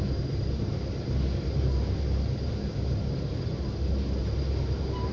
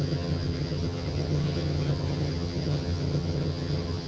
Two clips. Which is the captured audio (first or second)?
first